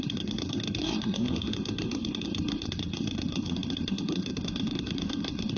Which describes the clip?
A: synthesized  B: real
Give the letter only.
A